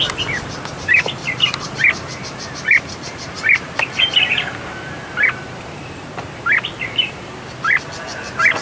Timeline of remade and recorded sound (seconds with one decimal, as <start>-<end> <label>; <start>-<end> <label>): 0.0-1.2 recorded; 1.2-3.7 remade; 3.7-4.3 recorded; 4.3-7.3 remade; 7.3-8.6 recorded